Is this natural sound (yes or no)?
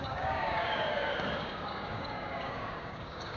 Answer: no